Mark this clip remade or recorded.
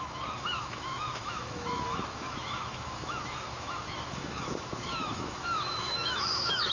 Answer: remade